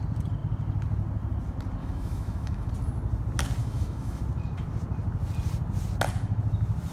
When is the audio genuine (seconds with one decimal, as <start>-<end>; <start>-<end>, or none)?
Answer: 0.0-1.8; 2.7-3.6; 4.2-6.9